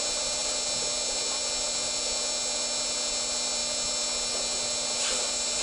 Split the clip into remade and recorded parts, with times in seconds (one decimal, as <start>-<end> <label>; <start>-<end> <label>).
0.0-5.6 recorded